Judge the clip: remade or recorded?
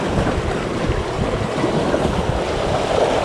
remade